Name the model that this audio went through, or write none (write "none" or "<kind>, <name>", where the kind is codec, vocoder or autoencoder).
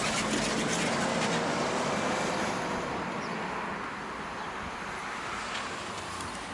none